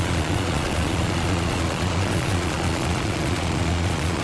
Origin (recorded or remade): remade